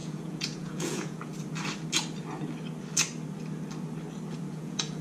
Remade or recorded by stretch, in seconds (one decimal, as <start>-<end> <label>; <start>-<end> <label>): 0.0-1.3 remade; 1.3-4.3 recorded; 4.3-5.0 remade